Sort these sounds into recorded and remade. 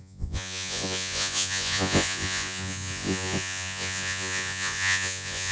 remade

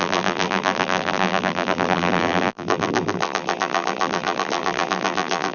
remade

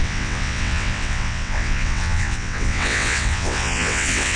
remade